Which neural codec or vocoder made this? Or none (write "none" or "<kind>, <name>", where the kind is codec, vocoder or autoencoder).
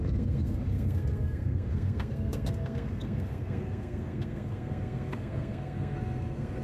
codec, SNAC